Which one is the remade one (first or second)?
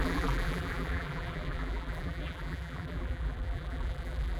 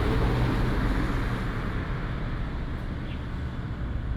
first